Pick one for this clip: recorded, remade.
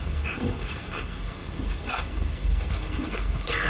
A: remade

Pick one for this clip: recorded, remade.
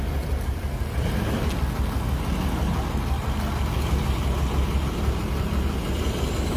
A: recorded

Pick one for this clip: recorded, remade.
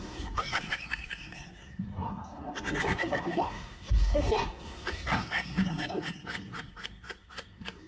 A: remade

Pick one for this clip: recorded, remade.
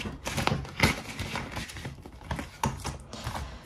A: recorded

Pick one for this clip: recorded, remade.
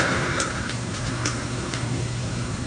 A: remade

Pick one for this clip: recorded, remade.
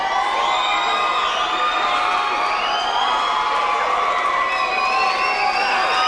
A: recorded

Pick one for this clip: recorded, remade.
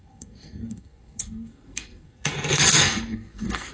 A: remade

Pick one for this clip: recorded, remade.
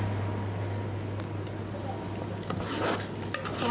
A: recorded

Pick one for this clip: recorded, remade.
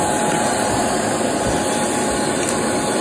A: recorded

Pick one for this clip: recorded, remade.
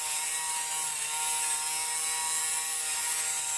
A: recorded